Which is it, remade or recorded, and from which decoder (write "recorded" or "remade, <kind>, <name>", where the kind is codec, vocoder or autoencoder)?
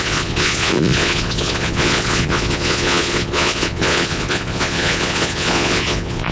remade, vocoder, Vocos